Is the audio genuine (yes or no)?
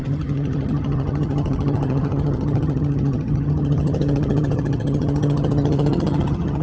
no